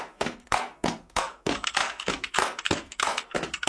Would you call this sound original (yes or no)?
no